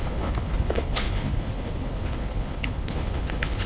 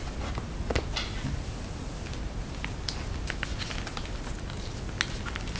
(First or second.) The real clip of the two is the second